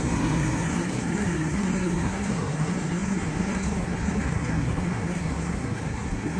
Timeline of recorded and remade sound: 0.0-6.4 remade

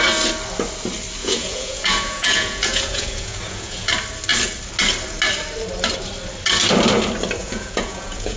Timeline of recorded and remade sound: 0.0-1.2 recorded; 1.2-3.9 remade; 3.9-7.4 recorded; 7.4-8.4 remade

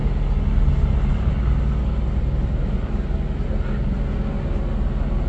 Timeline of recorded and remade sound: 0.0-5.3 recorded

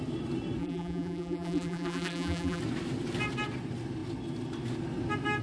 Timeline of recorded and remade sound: 0.0-0.6 recorded; 0.6-2.6 remade; 2.6-5.4 recorded

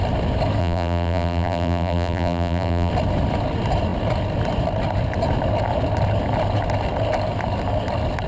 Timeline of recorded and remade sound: 0.0-0.6 recorded; 0.6-2.9 remade; 2.9-8.3 recorded

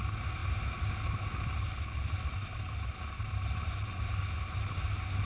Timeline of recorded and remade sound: 0.0-5.3 recorded

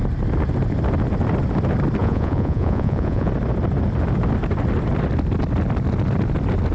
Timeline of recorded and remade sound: 0.0-2.0 recorded; 2.0-3.3 remade; 3.3-6.7 recorded